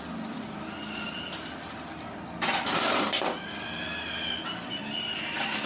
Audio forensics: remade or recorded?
recorded